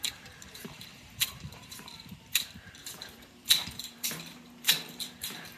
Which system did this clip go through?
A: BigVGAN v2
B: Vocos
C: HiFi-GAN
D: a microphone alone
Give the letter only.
A